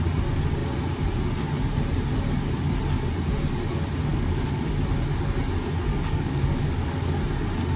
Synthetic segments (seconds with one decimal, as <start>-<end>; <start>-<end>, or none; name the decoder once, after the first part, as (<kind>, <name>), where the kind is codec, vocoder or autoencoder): 4.1-4.7 (codec, DAC); 5.9-7.2

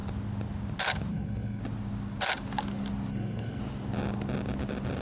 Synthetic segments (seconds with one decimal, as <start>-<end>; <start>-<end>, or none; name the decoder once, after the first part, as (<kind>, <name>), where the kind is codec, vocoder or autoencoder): 1.1-1.6 (codec, SNAC); 3.1-3.6

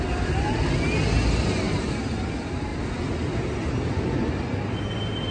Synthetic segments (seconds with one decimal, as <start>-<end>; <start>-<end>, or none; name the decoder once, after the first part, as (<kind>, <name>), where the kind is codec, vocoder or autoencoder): none

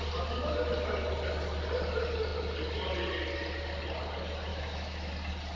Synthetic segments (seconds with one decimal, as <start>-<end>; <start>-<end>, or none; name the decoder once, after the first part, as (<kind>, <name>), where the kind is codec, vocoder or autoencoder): 4.5-5.1 (autoencoder, DAC-VAE)

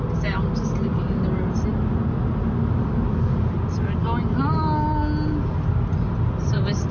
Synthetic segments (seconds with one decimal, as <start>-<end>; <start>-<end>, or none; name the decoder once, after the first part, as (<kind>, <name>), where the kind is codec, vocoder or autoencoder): none

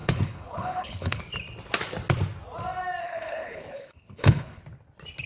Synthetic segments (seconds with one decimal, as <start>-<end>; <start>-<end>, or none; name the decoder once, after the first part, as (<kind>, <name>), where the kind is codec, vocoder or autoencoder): 0.0-1.2 (codec, HILCodec); 3.0-4.6